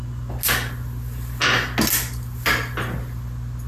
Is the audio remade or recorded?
recorded